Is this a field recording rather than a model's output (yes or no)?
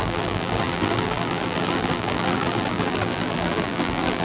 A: no